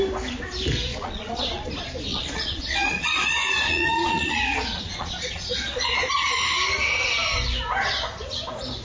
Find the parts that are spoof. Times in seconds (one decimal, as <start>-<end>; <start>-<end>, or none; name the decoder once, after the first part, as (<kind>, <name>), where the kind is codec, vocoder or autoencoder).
0.9-1.7 (vocoder, Vocos); 2.1-6.1